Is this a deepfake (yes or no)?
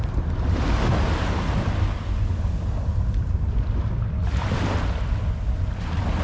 no